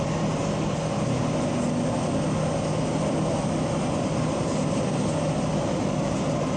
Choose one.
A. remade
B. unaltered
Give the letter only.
B